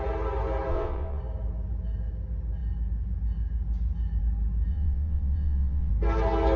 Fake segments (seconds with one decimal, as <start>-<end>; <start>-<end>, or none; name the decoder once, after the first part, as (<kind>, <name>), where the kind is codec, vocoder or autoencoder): 0.7-1.2 (vocoder, WaveNeXt); 4.7-5.9

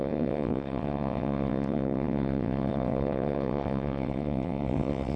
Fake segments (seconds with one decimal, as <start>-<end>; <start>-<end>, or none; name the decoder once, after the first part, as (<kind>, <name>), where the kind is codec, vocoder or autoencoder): 0.0-5.2 (vocoder, WaveNeXt)

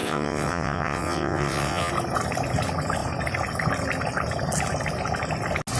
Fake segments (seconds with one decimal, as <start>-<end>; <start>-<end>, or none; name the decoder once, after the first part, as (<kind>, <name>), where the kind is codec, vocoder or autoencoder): 0.0-1.9 (vocoder, WaveNeXt)

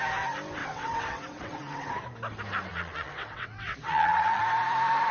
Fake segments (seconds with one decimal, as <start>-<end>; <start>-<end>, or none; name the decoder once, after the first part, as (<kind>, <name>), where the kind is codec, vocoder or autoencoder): 0.6-1.9 (vocoder, WaveNeXt); 2.7-4.4

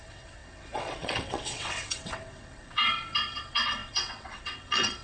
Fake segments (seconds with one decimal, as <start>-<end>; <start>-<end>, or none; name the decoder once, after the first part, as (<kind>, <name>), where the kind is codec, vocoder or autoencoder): 0.0-5.0 (vocoder, WaveNeXt)

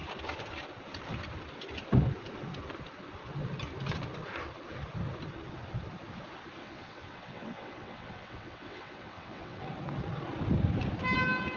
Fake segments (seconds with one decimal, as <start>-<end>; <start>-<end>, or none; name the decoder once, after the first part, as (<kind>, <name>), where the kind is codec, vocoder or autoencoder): 6.6-9.7 (vocoder, WaveNeXt)